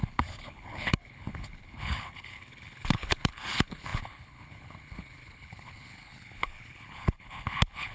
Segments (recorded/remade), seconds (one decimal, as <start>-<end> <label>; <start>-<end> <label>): 0.0-7.9 remade